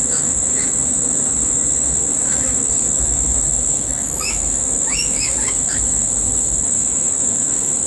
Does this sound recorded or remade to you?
remade